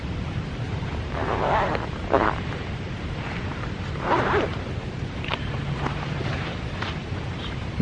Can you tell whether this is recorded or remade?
remade